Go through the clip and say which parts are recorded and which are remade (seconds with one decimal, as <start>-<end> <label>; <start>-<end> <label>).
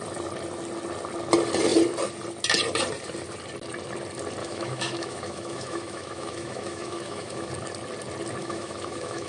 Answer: 0.0-4.4 recorded; 4.4-7.5 remade; 7.5-8.4 recorded; 8.4-9.3 remade